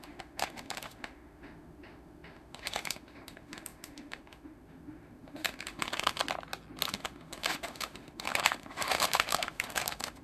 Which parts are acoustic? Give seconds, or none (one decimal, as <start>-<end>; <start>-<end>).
6.2-6.9